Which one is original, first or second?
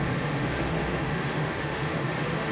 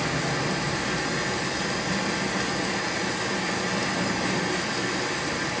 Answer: second